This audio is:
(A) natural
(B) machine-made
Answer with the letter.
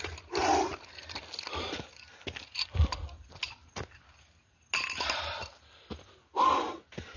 A